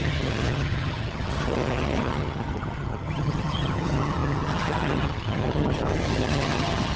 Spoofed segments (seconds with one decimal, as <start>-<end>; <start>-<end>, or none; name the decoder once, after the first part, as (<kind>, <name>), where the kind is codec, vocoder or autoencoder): 0.0-7.0 (vocoder, HiFi-GAN)